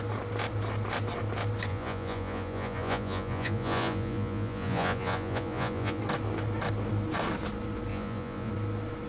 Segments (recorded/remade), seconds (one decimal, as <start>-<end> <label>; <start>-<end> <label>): 0.0-1.7 recorded; 1.7-6.0 remade; 6.0-7.9 recorded; 7.9-8.5 remade; 8.5-9.1 recorded